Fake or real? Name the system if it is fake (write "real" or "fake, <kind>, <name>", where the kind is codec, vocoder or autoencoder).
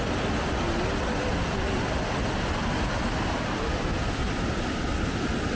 real